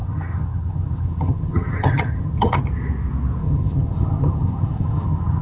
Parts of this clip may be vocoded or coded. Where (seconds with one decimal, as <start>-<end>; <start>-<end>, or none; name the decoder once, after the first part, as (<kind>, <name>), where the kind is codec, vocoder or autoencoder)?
0.0-2.6 (vocoder, HiFi-GAN); 3.4-5.4